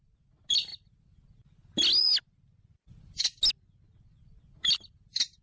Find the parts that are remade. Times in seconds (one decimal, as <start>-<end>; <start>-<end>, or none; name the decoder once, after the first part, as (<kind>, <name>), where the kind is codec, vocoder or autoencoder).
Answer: none